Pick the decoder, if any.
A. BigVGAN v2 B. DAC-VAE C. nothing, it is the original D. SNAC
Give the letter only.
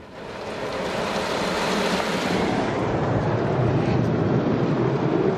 A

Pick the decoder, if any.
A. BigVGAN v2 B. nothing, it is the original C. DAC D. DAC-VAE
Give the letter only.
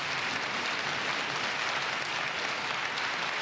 B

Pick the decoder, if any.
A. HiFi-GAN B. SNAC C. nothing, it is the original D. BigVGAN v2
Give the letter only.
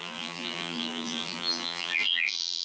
D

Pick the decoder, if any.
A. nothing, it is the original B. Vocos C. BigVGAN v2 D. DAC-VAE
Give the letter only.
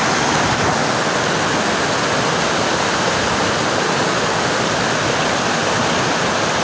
A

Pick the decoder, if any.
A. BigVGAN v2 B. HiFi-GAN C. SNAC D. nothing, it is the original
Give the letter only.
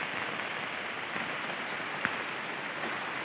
D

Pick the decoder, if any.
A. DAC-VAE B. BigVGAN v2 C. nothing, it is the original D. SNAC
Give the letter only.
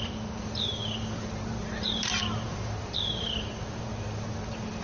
B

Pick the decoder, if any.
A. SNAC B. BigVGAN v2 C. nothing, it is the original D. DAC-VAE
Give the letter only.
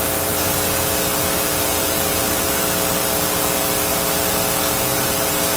C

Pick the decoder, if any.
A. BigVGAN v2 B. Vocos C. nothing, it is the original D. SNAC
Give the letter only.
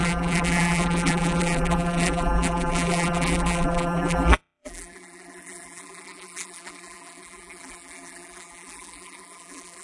A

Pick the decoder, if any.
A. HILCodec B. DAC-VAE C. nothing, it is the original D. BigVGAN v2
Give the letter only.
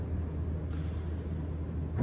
C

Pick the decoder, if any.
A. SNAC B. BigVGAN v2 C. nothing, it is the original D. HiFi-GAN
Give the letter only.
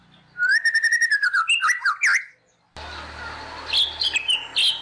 C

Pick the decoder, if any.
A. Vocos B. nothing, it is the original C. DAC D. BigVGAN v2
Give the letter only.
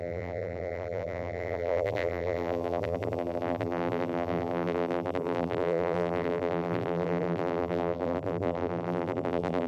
D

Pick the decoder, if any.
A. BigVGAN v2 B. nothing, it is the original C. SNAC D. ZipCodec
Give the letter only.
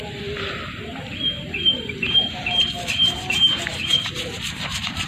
A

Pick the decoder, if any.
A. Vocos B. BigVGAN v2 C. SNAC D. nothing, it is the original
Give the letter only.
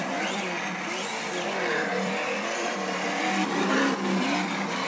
B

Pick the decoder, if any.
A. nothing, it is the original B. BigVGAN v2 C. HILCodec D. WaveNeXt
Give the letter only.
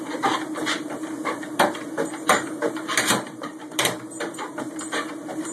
B